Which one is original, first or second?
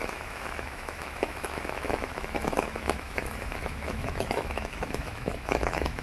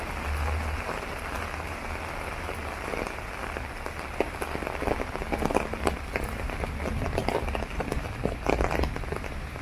second